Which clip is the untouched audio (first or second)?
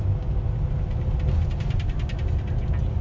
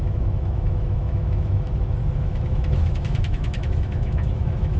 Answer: first